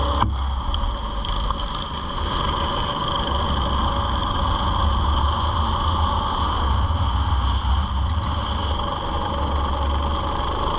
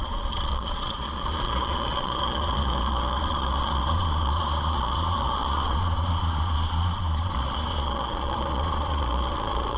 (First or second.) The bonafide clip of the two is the first